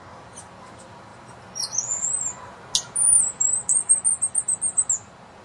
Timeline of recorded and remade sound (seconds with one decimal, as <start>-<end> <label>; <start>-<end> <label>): 0.0-5.4 recorded